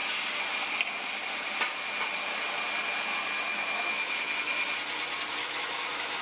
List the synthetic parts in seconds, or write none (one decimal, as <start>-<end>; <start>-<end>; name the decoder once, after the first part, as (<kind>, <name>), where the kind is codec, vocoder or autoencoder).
3.5-4.3 (autoencoder, DAC-VAE); 5.4-6.2